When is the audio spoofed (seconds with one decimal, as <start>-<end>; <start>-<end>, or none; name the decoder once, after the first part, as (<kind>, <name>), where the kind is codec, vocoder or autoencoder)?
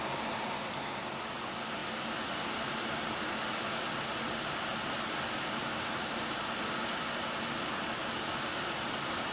none